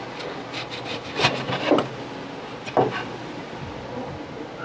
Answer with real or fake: real